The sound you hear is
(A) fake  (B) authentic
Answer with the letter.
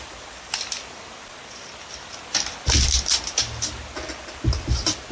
B